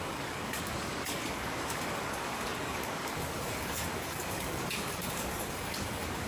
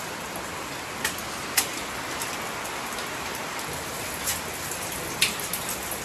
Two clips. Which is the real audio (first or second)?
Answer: second